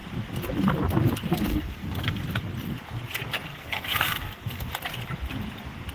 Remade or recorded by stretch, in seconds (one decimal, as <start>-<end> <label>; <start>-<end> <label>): 0.0-1.5 recorded; 1.5-2.2 remade; 2.2-3.5 recorded; 3.5-4.7 remade; 4.7-5.9 recorded